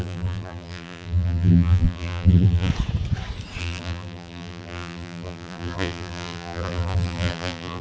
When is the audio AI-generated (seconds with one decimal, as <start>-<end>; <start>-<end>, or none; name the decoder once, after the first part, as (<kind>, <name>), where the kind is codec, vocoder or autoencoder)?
0.0-2.7 (vocoder, BigVGAN v2); 3.6-7.8

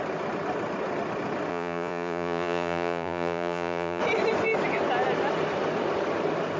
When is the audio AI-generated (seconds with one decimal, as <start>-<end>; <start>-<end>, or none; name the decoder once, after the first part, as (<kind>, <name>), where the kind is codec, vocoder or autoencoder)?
1.5-4.0 (vocoder, Vocos)